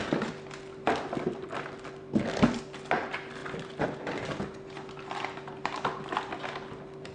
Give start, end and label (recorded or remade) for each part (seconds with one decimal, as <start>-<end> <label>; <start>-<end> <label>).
0.0-7.1 recorded